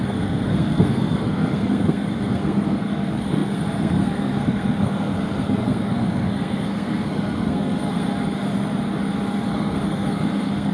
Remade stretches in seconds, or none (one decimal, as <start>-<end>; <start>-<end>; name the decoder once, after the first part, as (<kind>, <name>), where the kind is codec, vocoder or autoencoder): 0.0-8.1 (codec, SNAC); 9.5-10.7